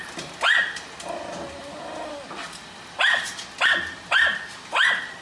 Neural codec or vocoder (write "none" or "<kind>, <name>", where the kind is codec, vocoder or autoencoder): none